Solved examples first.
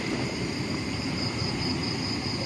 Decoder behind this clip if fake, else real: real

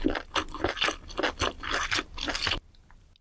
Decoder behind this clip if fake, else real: real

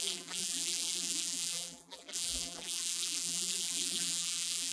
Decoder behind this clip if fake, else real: fake, vocoder, BigVGAN v2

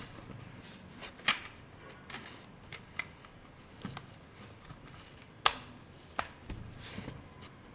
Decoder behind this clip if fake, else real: real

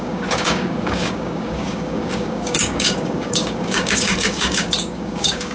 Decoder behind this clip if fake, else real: fake, codec, DAC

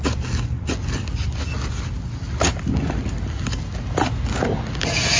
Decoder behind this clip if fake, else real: real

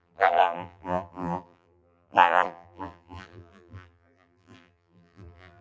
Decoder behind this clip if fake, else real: fake, vocoder, BigVGAN v2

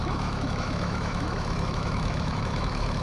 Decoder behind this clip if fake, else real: fake, autoencoder, DAC-VAE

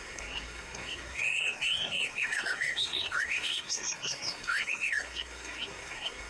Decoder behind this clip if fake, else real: fake, codec, SNAC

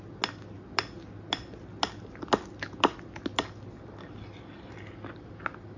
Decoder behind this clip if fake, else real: real